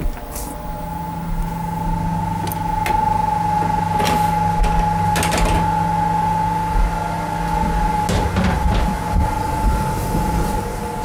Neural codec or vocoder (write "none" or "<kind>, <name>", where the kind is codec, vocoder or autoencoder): none